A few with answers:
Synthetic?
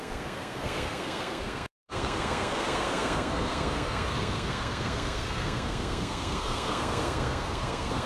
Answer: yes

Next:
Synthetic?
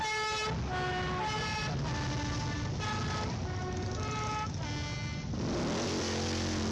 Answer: no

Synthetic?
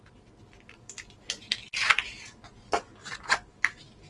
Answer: no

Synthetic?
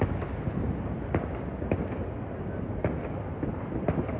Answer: no